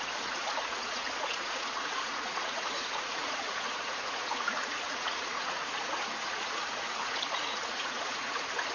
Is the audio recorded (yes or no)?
no